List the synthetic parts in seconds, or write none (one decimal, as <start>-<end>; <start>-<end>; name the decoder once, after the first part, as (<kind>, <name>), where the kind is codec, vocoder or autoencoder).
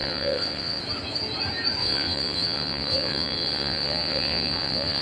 0.0-0.8 (vocoder, WaveNeXt); 1.8-5.0